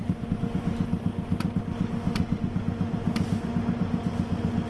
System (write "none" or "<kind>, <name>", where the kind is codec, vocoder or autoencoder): none